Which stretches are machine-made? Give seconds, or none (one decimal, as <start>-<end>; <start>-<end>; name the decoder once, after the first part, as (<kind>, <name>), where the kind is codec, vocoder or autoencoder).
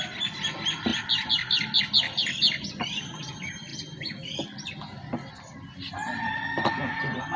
none